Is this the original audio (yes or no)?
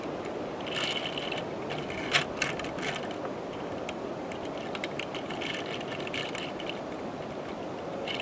yes